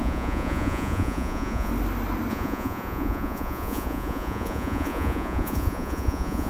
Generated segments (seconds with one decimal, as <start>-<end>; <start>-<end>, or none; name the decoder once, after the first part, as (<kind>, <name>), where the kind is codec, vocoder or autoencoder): 0.0-1.7 (vocoder, Vocos); 2.3-6.5